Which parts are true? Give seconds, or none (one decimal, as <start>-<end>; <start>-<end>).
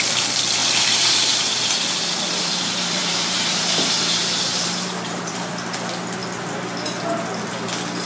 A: 0.0-0.6; 5.5-8.1